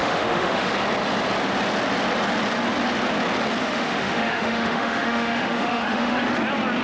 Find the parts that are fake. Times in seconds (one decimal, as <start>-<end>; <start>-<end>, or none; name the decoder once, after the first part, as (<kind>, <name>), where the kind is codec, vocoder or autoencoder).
0.0-0.7 (autoencoder, DAC-VAE); 3.6-6.3